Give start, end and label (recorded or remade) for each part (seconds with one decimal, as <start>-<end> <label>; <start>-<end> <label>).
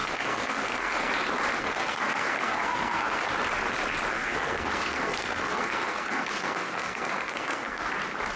0.0-1.1 remade; 1.1-1.6 recorded; 1.6-3.2 remade; 3.2-4.1 recorded; 4.1-7.9 remade; 7.9-8.4 recorded